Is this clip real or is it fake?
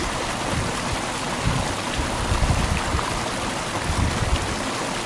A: real